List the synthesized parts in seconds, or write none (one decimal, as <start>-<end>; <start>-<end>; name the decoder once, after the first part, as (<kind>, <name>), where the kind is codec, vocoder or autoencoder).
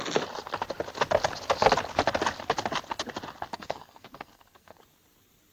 3.5-4.8 (codec, SNAC)